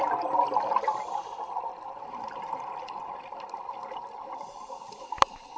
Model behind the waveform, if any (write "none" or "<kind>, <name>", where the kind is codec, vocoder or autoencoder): none